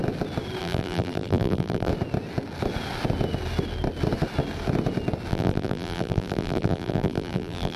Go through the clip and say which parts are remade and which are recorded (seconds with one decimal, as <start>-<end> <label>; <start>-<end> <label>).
0.0-0.6 recorded; 0.6-1.9 remade; 1.9-5.3 recorded; 5.3-7.8 remade